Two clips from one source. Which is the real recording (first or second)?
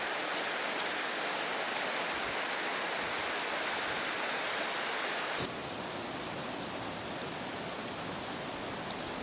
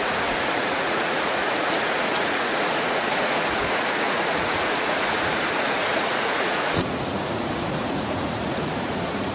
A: first